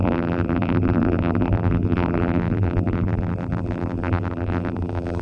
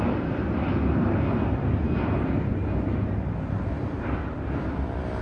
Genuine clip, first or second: second